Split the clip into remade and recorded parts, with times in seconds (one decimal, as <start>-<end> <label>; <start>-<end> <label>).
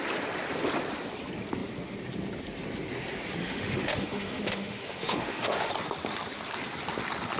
0.0-3.4 recorded; 3.4-5.7 remade; 5.7-7.4 recorded